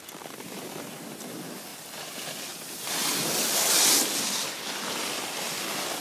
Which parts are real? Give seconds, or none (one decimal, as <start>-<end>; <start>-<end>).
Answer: 0.0-6.0